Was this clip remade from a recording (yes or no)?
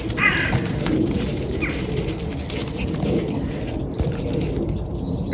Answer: no